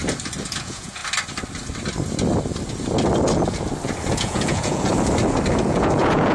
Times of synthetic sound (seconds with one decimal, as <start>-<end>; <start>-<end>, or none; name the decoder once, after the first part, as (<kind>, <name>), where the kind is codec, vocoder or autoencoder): 0.6-1.0 (vocoder, Vocos); 4.1-4.9; 5.6-6.3